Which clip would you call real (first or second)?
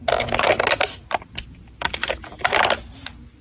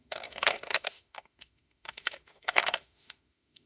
first